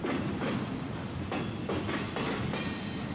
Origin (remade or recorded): recorded